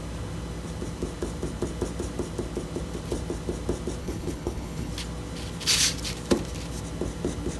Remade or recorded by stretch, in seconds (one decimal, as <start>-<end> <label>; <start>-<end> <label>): 0.0-4.0 recorded; 4.0-4.9 remade; 4.9-7.6 recorded